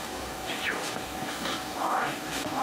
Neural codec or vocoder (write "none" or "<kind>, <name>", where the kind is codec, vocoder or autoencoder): codec, DAC